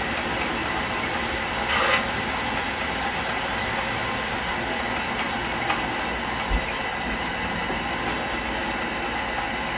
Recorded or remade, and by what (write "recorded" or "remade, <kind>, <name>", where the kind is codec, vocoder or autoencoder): recorded